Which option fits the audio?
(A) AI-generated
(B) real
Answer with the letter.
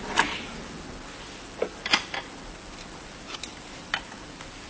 B